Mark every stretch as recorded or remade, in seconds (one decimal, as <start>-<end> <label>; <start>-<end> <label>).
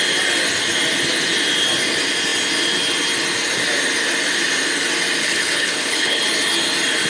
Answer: 0.0-5.2 recorded; 5.2-6.2 remade; 6.2-7.1 recorded